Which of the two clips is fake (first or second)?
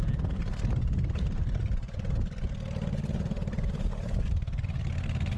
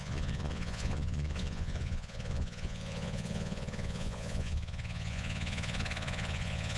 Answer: second